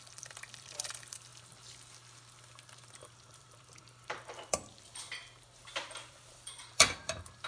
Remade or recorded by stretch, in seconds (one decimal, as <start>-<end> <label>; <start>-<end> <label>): 0.0-1.3 remade; 1.3-3.0 recorded; 3.0-5.2 remade; 5.2-6.1 recorded; 6.1-7.5 remade